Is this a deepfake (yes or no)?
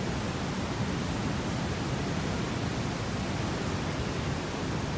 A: no